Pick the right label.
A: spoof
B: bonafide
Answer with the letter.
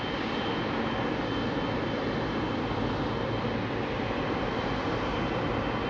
B